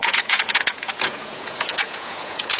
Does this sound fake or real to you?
fake